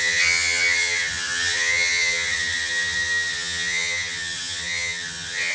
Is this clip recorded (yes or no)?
no